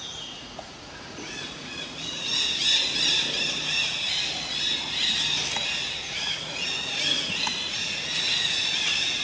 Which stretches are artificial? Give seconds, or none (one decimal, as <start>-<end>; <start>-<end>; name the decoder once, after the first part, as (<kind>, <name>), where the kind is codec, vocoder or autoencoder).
0.0-2.6 (vocoder, Vocos); 6.0-9.2